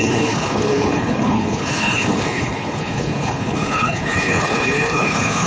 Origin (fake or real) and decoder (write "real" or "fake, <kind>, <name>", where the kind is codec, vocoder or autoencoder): fake, codec, HILCodec